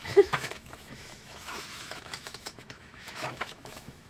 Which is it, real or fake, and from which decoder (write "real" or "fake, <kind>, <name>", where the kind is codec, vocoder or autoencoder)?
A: fake, autoencoder, DAC-VAE